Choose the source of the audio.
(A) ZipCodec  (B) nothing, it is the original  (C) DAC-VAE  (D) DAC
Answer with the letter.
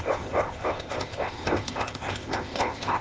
A